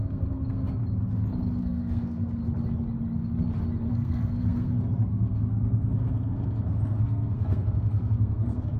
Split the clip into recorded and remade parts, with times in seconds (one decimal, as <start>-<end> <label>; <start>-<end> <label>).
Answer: 0.0-0.8 remade; 0.8-1.6 recorded; 1.6-2.4 remade; 2.4-3.9 recorded; 3.9-8.8 remade